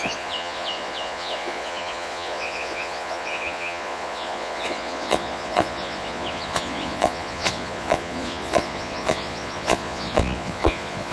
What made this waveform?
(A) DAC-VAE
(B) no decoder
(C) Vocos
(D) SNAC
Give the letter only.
C